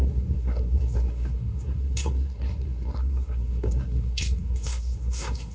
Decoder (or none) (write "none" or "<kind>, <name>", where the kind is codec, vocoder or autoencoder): codec, SNAC